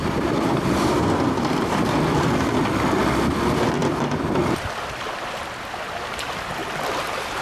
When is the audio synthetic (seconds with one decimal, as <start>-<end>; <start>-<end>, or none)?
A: 0.0-2.3; 3.8-5.8; 6.6-7.4